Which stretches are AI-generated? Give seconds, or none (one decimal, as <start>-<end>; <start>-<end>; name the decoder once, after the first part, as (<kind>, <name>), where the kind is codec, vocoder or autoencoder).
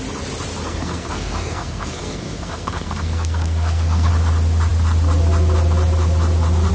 0.6-4.1 (codec, SNAC)